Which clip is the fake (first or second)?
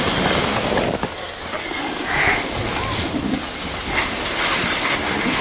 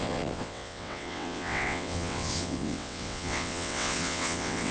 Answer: second